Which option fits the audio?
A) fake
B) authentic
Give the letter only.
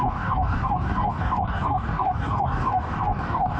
A